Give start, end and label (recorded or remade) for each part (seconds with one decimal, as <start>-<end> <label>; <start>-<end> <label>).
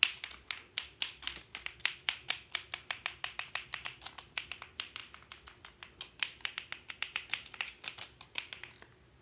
0.0-9.2 recorded